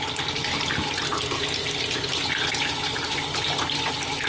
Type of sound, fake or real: real